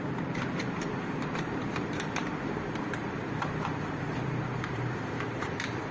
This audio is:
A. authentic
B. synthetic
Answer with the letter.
B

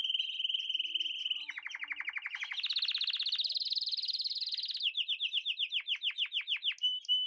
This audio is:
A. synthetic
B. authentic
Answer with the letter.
B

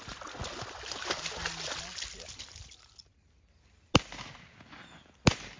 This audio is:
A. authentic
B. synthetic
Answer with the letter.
A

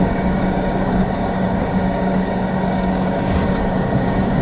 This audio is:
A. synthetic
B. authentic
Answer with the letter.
A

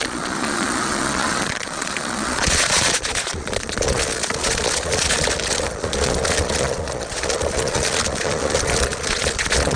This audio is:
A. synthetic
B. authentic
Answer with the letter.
A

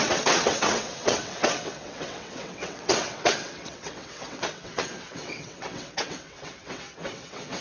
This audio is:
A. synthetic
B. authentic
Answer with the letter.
A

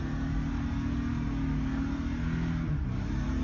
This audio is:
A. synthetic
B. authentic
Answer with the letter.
B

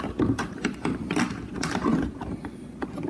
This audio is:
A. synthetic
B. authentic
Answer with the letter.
B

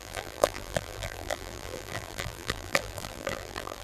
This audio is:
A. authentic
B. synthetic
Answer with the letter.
B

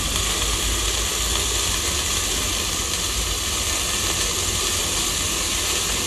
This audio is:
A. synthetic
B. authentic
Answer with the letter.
B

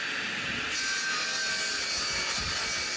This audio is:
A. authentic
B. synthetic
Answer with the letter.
A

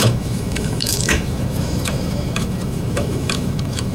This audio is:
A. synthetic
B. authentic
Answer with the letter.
A